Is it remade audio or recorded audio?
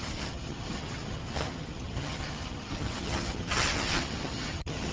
remade